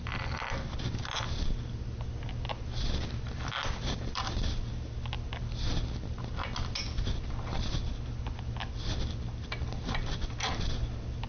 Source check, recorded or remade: recorded